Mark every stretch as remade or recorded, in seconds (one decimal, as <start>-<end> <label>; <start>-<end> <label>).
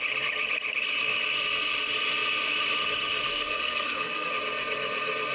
0.0-3.3 recorded; 3.3-4.3 remade; 4.3-5.3 recorded